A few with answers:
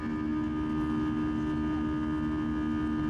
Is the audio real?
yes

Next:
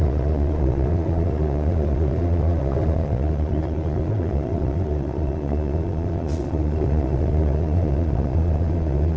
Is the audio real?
no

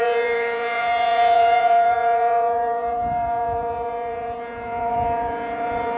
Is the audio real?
no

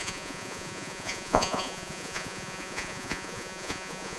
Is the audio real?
no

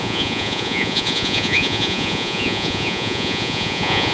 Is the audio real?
no